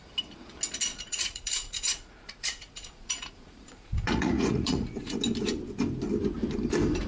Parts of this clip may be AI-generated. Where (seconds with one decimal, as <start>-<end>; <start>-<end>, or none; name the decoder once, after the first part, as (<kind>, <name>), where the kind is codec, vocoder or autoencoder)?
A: 0.9-5.2 (vocoder, Vocos)